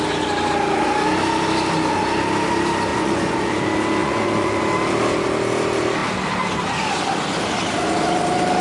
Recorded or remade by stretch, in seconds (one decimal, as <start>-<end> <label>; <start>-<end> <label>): 0.0-2.9 recorded; 2.9-3.5 remade; 3.5-4.0 recorded; 4.0-4.6 remade; 4.6-8.6 recorded

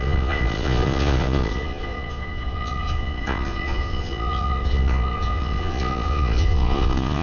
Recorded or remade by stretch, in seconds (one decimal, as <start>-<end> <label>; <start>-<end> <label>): 0.0-7.2 remade

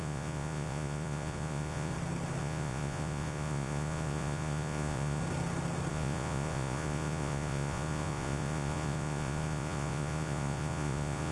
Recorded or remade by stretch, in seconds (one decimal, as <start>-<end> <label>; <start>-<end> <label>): 0.0-1.9 remade; 1.9-2.4 recorded; 2.4-5.2 remade; 5.2-5.9 recorded; 5.9-11.3 remade

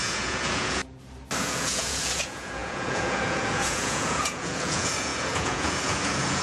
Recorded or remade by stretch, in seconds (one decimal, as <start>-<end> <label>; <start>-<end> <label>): 0.0-0.8 remade; 0.8-1.4 recorded; 1.4-6.4 remade

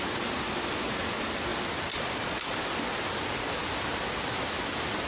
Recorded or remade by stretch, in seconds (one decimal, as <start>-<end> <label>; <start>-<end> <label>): 0.0-5.1 recorded

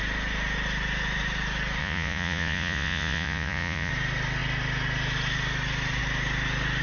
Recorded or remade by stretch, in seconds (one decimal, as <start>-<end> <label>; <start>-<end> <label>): 0.0-1.8 recorded; 1.8-3.9 remade; 3.9-6.8 recorded